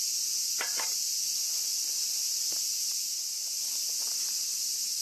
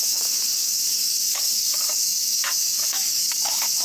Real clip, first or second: first